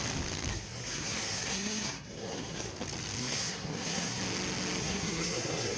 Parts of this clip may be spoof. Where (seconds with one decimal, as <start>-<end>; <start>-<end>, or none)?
0.5-2.7; 3.2-4.2; 4.8-5.8

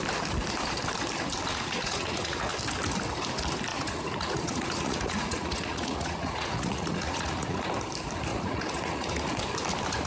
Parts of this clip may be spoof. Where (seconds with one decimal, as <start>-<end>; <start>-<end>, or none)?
1.5-2.5; 3.7-7.7; 8.3-9.1

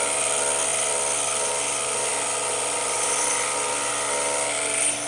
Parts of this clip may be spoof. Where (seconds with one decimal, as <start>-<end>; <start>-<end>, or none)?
0.7-1.5; 2.1-3.9

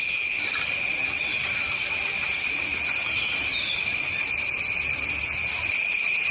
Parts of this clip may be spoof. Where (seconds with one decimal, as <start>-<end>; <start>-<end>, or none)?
1.3-1.8; 2.7-6.3

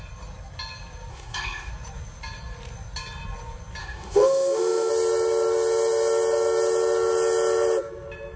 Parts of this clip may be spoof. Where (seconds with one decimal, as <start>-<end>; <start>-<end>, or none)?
1.1-1.7; 3.8-4.9

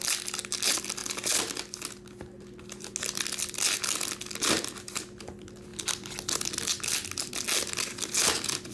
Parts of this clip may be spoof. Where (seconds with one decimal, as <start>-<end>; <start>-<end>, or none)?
none

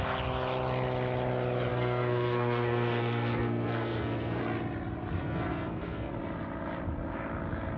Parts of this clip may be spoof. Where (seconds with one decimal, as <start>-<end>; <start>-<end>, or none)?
1.7-4.4; 5.2-6.1

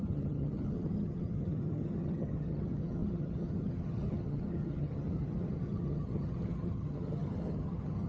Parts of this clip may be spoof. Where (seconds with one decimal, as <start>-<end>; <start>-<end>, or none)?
0.0-8.1